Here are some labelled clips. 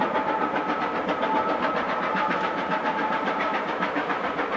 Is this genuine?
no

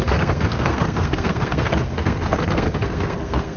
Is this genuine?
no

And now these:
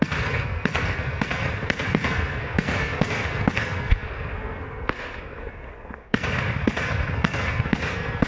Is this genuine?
no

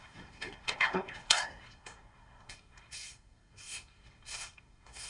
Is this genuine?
no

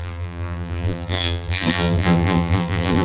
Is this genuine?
no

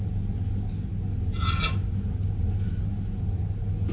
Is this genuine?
yes